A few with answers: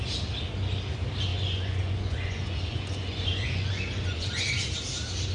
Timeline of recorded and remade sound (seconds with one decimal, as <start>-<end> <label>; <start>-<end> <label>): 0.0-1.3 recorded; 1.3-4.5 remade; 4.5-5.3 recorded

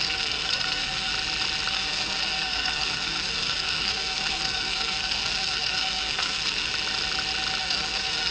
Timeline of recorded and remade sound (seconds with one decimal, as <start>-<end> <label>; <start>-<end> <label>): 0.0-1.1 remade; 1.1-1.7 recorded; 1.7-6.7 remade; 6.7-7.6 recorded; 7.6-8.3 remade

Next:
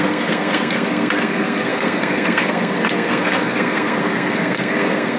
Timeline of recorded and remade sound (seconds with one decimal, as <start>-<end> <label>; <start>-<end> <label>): 0.0-5.2 remade

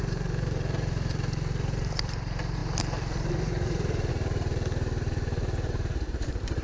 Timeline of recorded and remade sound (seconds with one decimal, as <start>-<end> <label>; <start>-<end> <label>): 0.0-6.6 remade

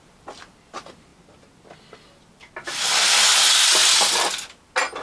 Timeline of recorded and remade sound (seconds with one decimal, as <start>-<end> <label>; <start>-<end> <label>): 0.0-5.0 recorded

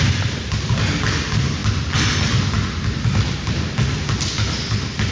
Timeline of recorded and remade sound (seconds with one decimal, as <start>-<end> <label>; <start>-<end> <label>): 0.0-5.1 recorded